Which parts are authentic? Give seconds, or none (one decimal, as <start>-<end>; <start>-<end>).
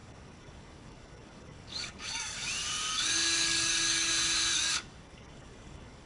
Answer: 2.5-2.9; 4.1-4.5